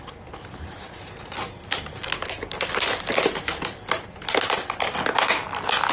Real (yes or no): yes